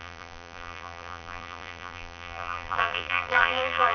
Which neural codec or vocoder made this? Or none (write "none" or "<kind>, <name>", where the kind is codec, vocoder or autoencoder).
vocoder, BigVGAN v2